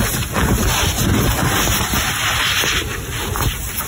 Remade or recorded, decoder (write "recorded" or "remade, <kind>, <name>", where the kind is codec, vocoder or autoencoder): recorded